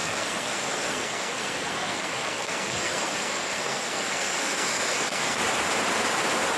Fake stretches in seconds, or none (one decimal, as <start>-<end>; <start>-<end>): 0.0-5.4